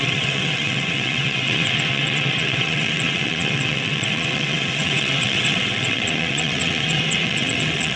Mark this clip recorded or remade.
remade